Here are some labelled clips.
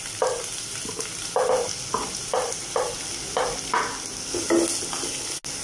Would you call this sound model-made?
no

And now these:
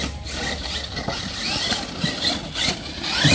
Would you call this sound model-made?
no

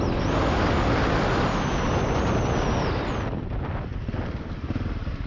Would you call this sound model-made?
no